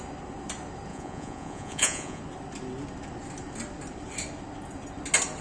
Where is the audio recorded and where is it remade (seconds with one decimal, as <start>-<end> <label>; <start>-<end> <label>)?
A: 0.0-0.9 recorded; 0.9-2.2 remade; 2.2-5.4 recorded

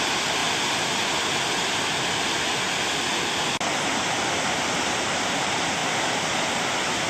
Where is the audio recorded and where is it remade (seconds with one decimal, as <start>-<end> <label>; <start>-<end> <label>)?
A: 0.0-0.4 remade; 0.4-4.6 recorded; 4.6-5.8 remade; 5.8-7.1 recorded

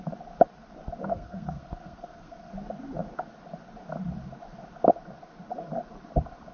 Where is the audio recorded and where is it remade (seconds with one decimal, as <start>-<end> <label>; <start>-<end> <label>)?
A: 0.0-1.1 recorded; 1.1-2.5 remade; 2.5-6.5 recorded

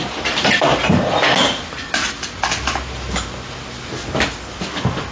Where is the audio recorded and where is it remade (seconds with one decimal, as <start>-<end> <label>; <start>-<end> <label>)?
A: 0.0-5.1 recorded

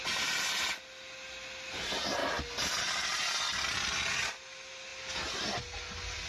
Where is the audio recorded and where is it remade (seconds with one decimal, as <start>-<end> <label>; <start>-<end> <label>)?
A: 0.0-6.3 recorded

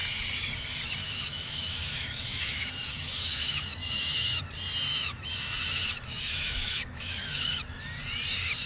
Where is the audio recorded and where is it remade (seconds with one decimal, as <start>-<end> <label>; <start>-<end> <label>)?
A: 0.0-1.0 recorded; 1.0-4.4 remade; 4.4-4.9 recorded; 4.9-7.8 remade; 7.8-8.7 recorded

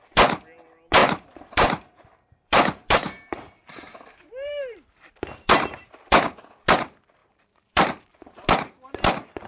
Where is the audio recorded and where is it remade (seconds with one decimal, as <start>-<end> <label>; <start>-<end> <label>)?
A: 0.0-1.0 recorded; 1.0-5.0 remade; 5.0-7.2 recorded; 7.2-8.0 remade; 8.0-9.5 recorded